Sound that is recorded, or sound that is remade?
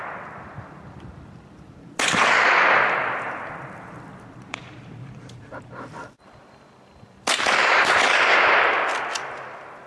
remade